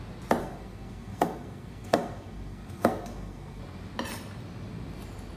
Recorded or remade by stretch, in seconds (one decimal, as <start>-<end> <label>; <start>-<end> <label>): 0.0-0.4 recorded; 0.4-3.6 remade; 3.6-5.4 recorded